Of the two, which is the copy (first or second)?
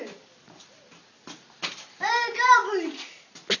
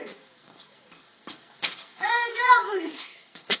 second